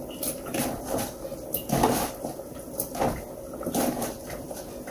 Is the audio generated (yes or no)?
no